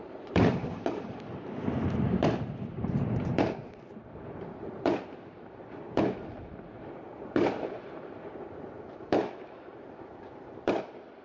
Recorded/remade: remade